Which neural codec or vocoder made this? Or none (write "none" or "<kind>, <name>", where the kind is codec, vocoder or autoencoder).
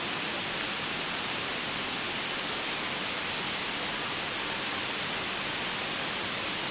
none